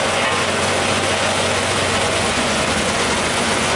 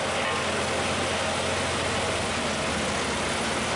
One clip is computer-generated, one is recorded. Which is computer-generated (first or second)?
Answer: first